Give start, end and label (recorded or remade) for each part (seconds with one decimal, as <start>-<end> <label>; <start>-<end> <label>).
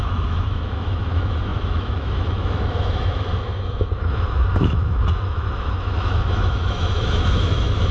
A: 0.0-7.9 remade